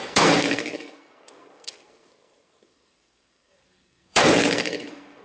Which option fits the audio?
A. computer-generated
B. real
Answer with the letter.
A